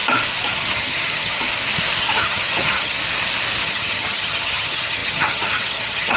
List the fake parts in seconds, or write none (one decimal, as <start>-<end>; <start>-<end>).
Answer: 0.5-1.4; 2.0-3.0; 3.6-6.2